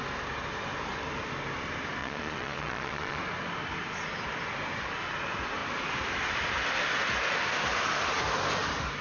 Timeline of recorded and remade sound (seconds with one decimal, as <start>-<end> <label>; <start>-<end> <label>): 0.0-2.0 recorded; 2.0-3.2 remade; 3.2-9.0 recorded